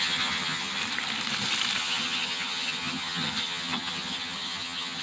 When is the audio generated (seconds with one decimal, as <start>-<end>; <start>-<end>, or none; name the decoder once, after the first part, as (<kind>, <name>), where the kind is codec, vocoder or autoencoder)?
0.0-0.8 (vocoder, HiFi-GAN); 1.8-5.0